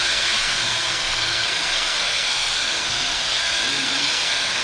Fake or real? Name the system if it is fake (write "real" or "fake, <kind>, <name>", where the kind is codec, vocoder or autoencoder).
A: fake, codec, SNAC